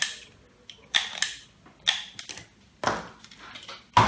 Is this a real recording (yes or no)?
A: yes